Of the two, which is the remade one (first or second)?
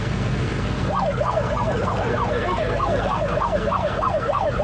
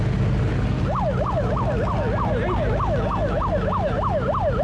first